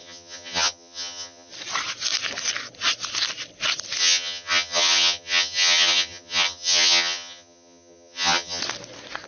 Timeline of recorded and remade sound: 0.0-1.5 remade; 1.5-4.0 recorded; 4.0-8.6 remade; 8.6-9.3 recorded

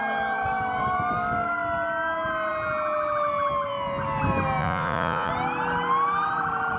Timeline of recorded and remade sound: 0.0-4.6 recorded; 4.6-5.3 remade; 5.3-6.8 recorded

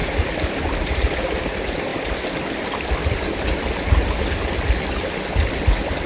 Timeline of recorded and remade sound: 0.0-6.1 recorded

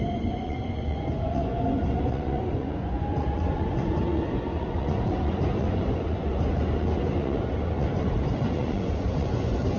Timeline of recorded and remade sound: 0.0-9.8 remade

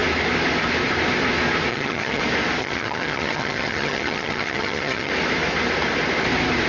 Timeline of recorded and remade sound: 0.0-1.7 recorded; 1.7-2.2 remade; 2.2-2.6 recorded; 2.6-5.1 remade; 5.1-6.7 recorded

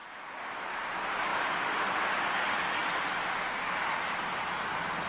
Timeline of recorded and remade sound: 0.0-1.3 recorded; 1.3-2.2 remade; 2.2-2.8 recorded; 2.8-3.4 remade; 3.4-5.1 recorded

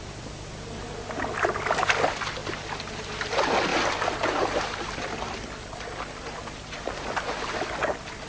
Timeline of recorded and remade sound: 0.0-8.3 recorded